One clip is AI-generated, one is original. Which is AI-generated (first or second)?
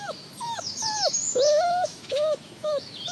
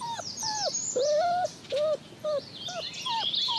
first